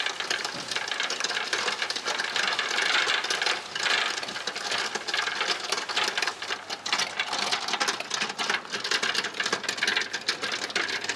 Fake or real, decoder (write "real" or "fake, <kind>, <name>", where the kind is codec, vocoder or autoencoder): real